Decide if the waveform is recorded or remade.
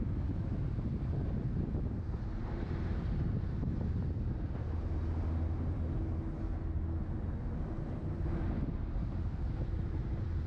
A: recorded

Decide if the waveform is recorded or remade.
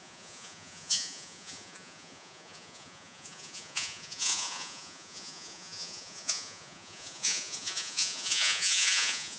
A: remade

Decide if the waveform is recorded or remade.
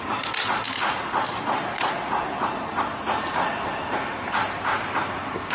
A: recorded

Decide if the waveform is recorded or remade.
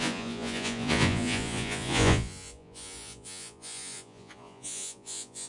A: remade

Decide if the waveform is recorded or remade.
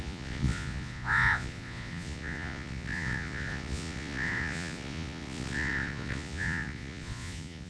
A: remade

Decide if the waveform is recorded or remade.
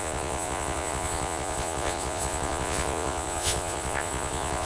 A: remade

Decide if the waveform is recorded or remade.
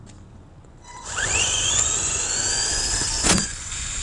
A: remade